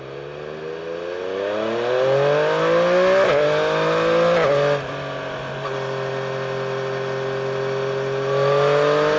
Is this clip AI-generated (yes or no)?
no